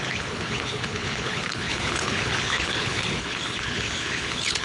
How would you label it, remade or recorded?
remade